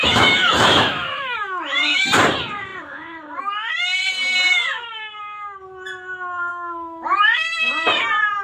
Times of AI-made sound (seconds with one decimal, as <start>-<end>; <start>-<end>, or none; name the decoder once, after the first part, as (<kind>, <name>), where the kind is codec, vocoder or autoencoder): 0.0-2.1 (autoencoder, DAC-VAE); 6.5-7.7